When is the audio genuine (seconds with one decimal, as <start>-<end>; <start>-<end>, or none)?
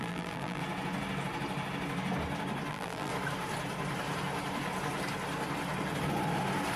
0.6-2.7; 3.1-6.8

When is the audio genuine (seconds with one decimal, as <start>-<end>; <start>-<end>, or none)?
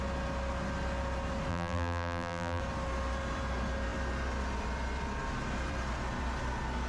0.0-1.5; 2.6-6.9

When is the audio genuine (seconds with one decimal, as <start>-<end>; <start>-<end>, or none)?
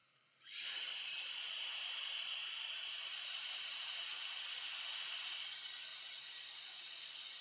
4.4-5.9; 6.9-7.4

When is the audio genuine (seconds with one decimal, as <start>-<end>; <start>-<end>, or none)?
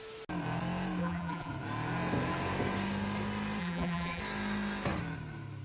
0.0-1.0; 1.5-3.6; 4.2-5.6